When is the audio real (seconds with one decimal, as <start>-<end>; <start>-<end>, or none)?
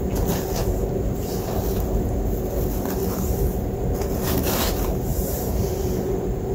0.0-5.1; 5.6-6.5